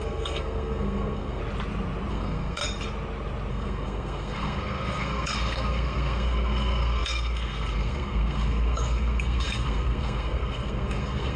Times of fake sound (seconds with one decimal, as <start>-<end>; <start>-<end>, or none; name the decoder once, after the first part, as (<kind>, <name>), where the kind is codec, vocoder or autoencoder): 0.0-1.4 (codec, SNAC); 2.1-2.6; 3.5-11.4